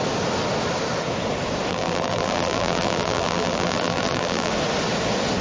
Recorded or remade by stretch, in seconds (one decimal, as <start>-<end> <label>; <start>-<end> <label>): 0.0-1.7 recorded; 1.7-4.5 remade; 4.5-5.4 recorded